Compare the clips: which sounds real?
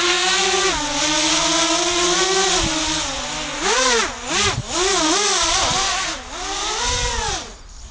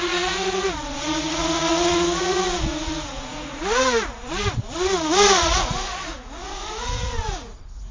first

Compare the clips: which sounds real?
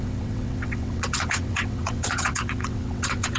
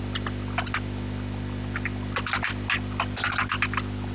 second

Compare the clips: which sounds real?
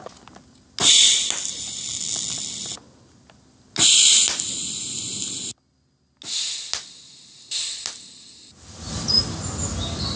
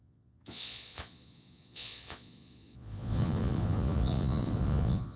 first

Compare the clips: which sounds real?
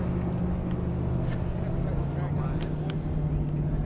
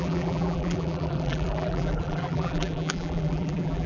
first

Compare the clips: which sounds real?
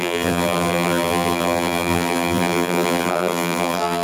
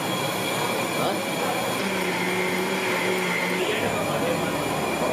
second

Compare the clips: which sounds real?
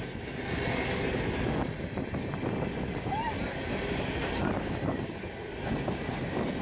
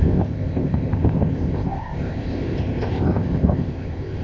first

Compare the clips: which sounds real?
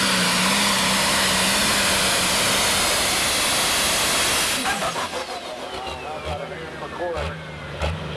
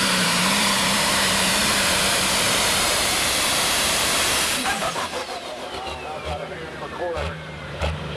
first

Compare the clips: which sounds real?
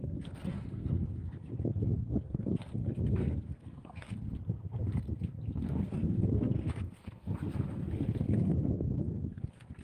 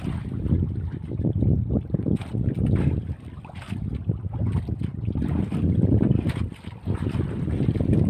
second